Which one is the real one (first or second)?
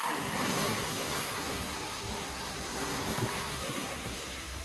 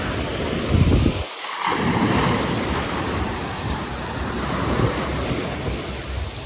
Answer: second